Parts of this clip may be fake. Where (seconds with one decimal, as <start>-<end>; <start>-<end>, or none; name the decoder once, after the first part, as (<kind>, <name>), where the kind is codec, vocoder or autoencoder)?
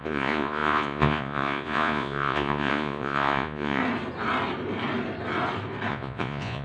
0.0-3.8 (vocoder, Vocos); 5.9-6.6